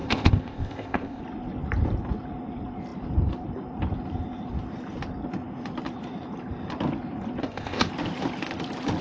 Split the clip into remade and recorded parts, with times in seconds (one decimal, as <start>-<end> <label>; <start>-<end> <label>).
0.0-1.2 remade; 1.2-7.4 recorded; 7.4-7.9 remade; 7.9-9.0 recorded